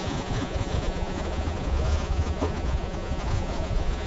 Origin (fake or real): fake